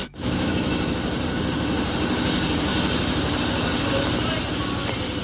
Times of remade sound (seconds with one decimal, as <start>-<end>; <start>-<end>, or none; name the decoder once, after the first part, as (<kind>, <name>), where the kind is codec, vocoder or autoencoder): 0.0-0.7 (autoencoder, DAC-VAE)